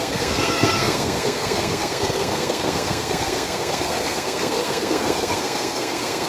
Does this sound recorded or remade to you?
remade